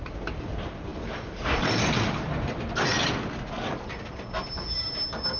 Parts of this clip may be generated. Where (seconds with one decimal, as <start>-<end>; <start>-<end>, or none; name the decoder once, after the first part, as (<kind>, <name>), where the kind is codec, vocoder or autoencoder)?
none